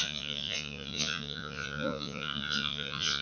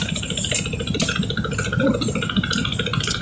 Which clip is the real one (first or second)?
second